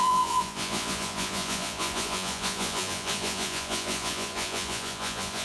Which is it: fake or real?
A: fake